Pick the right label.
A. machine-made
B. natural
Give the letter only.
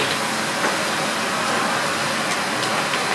B